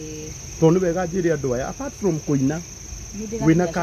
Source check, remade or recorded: recorded